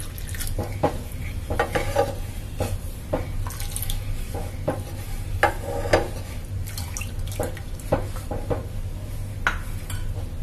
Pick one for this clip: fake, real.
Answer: real